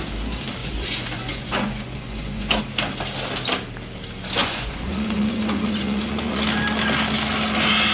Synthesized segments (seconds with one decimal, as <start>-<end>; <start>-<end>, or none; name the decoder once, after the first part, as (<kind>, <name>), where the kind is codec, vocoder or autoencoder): 0.6-2.6 (vocoder, Vocos); 4.4-6.4